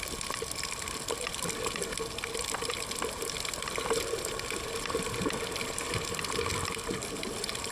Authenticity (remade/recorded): recorded